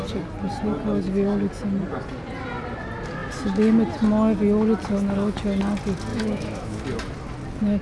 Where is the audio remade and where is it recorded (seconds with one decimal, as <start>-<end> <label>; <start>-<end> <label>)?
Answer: 0.0-6.1 recorded; 6.1-6.8 remade; 6.8-7.8 recorded